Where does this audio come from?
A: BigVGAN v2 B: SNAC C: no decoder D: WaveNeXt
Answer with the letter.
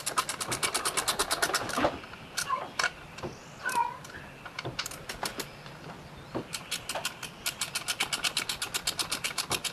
C